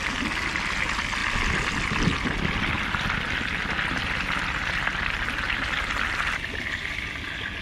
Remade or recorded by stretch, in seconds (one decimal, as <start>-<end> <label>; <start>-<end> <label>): 0.0-7.6 recorded